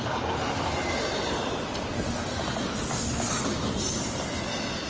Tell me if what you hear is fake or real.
real